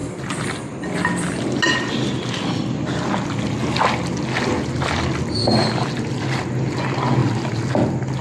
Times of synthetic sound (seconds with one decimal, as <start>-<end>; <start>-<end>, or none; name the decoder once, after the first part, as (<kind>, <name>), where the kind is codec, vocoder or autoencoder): none